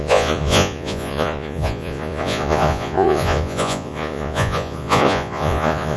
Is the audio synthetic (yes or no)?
yes